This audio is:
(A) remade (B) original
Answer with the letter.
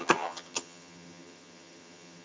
A